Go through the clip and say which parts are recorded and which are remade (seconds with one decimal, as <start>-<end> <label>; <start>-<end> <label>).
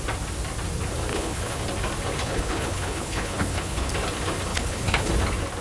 0.0-1.1 recorded; 1.1-1.6 remade; 1.6-2.2 recorded; 2.2-3.9 remade; 3.9-4.5 recorded; 4.5-5.1 remade; 5.1-5.6 recorded